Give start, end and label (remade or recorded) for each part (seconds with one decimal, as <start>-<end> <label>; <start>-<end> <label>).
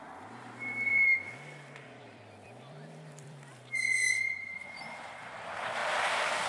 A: 0.0-0.9 recorded; 0.9-4.8 remade; 4.8-5.8 recorded; 5.8-6.5 remade